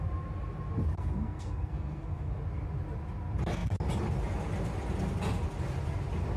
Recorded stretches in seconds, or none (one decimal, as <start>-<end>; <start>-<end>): 0.0-0.9; 2.4-6.4